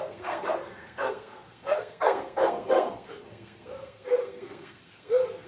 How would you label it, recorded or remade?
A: remade